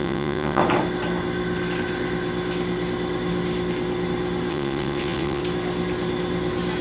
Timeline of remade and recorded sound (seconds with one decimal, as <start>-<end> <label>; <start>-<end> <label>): 0.0-0.6 remade; 0.6-4.5 recorded; 4.5-5.4 remade; 5.4-6.8 recorded